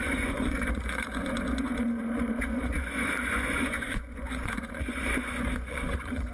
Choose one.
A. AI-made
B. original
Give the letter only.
A